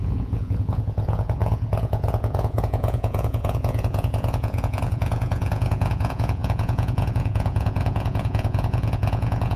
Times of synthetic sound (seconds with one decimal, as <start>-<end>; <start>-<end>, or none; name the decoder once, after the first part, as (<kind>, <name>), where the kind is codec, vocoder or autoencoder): 0.0-9.6 (vocoder, Vocos)